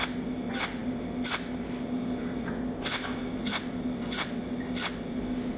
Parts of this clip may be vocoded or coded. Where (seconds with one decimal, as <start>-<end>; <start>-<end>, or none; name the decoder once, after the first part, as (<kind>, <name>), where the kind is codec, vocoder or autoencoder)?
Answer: none